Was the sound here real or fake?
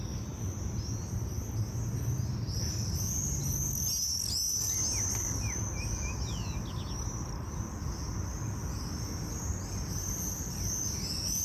real